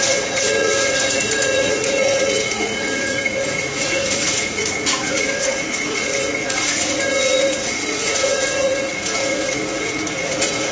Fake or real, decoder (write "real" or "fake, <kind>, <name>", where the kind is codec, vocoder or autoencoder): fake, vocoder, Vocos